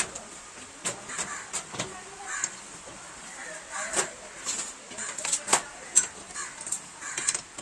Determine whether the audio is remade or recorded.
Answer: recorded